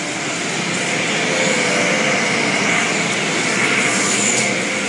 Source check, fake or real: real